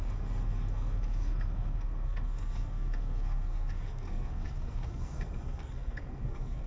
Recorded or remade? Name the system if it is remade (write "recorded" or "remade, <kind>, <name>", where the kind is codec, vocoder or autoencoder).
remade, codec, SNAC